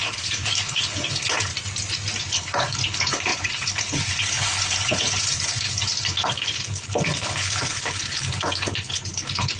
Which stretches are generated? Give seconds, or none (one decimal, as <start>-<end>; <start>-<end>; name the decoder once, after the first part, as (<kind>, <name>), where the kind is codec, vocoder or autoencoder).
0.0-1.5 (codec, HILCodec); 2.2-9.6